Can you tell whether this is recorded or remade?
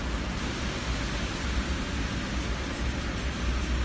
recorded